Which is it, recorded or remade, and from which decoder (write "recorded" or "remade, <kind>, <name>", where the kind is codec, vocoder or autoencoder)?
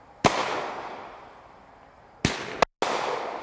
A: recorded